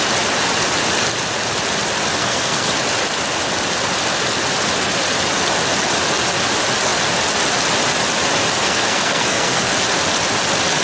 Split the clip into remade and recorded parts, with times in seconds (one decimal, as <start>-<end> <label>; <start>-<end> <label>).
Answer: 0.0-2.2 recorded; 2.2-2.7 remade; 2.7-8.6 recorded; 8.6-9.7 remade; 9.7-10.8 recorded